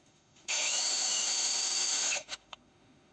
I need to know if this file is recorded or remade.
remade